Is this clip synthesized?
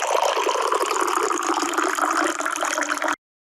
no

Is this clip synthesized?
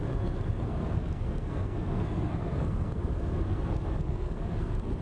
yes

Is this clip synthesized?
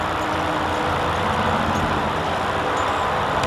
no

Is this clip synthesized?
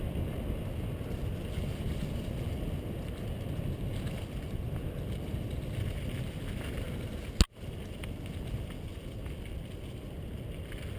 no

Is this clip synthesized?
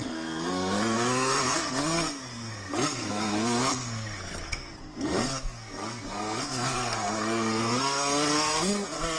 yes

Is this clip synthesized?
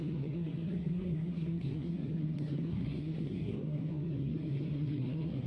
yes